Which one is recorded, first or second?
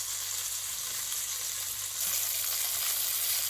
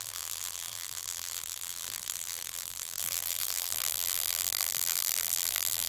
first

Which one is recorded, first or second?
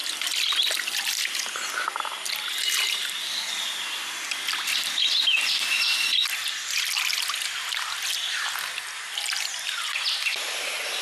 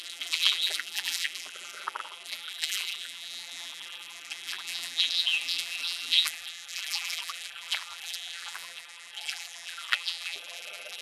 first